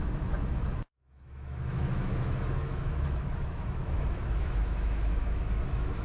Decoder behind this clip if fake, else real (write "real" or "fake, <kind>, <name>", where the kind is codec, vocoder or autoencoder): fake, autoencoder, DAC-VAE